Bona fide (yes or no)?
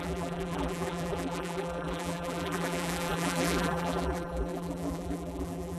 no